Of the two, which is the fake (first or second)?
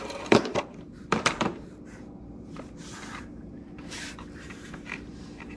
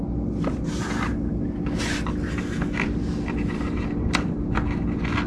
first